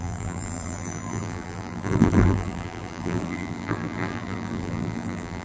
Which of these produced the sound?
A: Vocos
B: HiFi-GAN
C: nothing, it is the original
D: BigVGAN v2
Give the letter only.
D